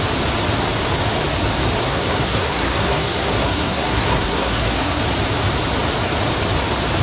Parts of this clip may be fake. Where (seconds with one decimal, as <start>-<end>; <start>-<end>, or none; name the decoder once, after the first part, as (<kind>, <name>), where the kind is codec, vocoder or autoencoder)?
1.8-5.0 (codec, SNAC)